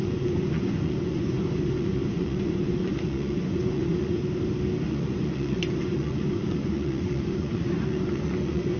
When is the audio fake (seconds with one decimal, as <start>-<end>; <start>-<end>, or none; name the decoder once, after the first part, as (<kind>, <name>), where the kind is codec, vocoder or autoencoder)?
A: 0.0-4.2 (vocoder, Vocos); 4.9-8.8